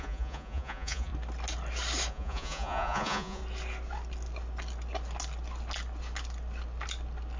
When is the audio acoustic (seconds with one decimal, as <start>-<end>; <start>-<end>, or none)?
1.1-2.1; 3.4-7.4